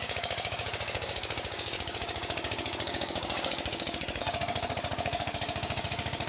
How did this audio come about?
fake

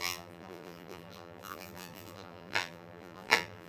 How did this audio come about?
fake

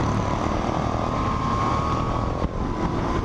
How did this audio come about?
real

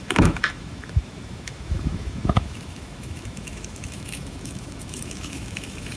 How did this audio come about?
fake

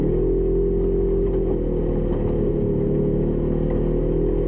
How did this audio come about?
real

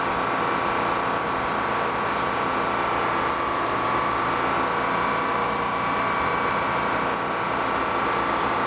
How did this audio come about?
real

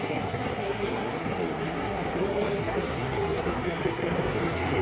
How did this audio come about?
fake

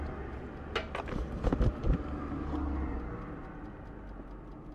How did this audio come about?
real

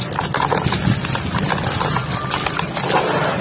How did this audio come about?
real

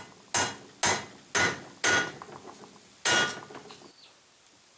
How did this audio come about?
real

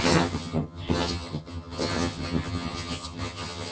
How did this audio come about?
fake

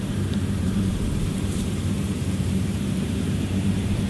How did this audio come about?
fake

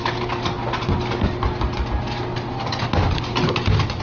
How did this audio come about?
real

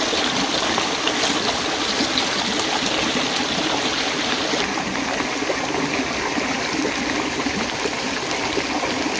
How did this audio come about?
real